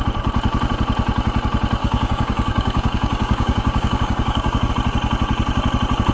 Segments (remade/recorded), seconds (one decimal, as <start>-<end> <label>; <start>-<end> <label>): 0.0-1.8 recorded; 1.8-4.7 remade; 4.7-6.1 recorded